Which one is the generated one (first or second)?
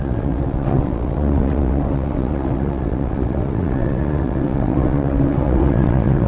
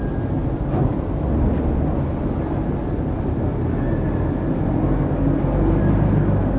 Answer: first